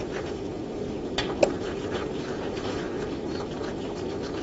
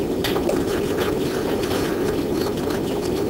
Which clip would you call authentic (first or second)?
first